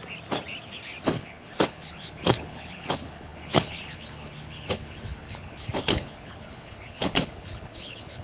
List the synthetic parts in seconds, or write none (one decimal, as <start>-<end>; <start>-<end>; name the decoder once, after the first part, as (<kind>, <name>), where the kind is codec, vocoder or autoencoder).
1.0-8.2 (codec, HILCodec)